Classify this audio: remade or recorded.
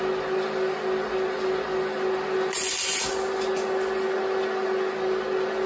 recorded